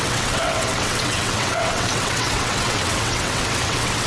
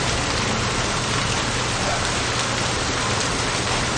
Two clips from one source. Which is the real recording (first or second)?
second